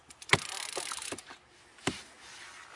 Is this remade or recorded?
recorded